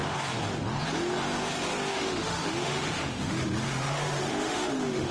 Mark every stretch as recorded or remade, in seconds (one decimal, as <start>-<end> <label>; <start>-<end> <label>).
0.0-1.9 recorded; 1.9-5.1 remade